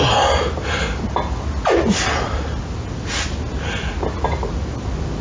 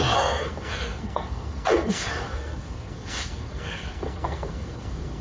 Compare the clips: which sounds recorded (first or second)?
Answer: first